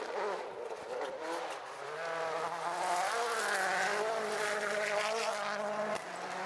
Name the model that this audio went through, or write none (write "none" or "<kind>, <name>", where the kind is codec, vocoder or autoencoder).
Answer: none